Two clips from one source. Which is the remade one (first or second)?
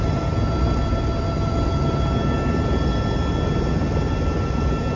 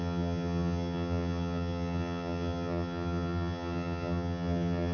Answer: second